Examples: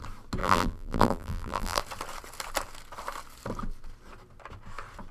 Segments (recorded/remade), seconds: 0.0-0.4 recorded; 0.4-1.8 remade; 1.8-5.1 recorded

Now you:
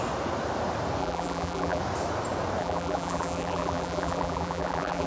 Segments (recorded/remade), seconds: 0.0-1.0 recorded; 1.0-1.8 remade; 1.8-2.6 recorded; 2.6-5.1 remade

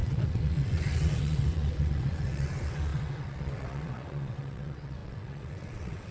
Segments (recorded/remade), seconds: 0.0-6.1 remade

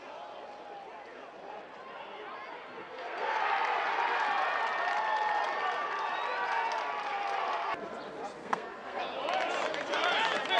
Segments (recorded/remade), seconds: 0.0-2.8 recorded; 2.8-3.4 remade; 3.4-8.4 recorded; 8.4-9.0 remade; 9.0-10.6 recorded

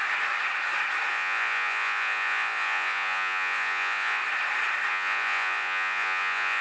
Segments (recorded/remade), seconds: 0.0-1.1 recorded; 1.1-4.2 remade; 4.2-4.9 recorded; 4.9-6.6 remade